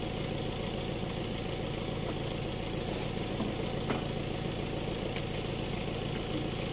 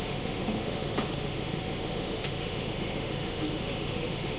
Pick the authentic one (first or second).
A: first